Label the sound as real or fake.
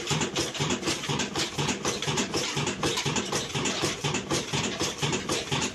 fake